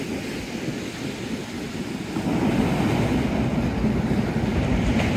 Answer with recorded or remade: recorded